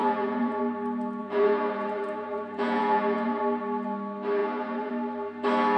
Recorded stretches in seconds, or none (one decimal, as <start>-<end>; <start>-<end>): 0.6-1.2; 3.4-4.4; 4.9-5.8